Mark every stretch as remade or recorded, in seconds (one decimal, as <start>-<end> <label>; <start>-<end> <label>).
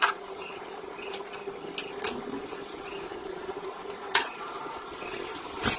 0.0-1.4 remade; 1.4-2.0 recorded; 2.0-5.3 remade; 5.3-5.8 recorded